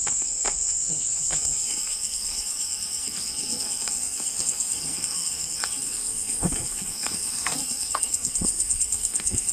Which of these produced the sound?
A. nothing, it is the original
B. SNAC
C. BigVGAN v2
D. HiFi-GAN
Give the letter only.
B